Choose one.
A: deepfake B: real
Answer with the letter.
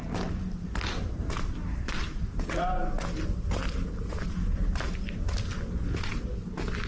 B